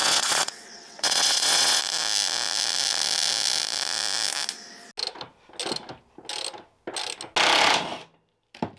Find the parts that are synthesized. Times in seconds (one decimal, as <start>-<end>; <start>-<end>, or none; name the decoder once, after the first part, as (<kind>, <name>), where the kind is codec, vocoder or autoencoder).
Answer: 0.0-1.8 (vocoder, WaveNeXt)